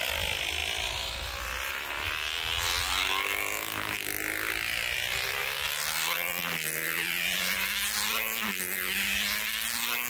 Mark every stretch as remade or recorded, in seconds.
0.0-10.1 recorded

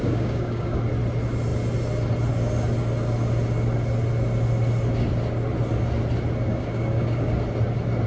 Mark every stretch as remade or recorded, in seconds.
0.0-0.8 remade; 0.8-6.5 recorded; 6.5-7.3 remade; 7.3-8.1 recorded

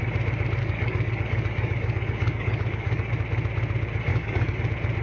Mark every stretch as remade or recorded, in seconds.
0.0-0.6 recorded; 0.6-3.1 remade; 3.1-4.1 recorded; 4.1-4.6 remade; 4.6-5.0 recorded

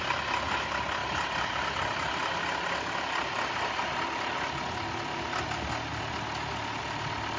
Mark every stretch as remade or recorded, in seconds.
0.0-7.4 recorded